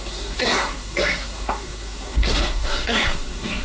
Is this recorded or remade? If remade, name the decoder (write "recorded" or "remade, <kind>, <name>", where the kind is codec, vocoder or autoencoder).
remade, codec, SNAC